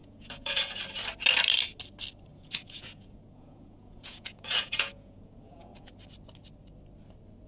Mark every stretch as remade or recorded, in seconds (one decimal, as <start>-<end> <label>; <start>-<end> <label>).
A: 0.0-0.8 remade; 0.8-2.3 recorded; 2.3-5.9 remade; 5.9-7.5 recorded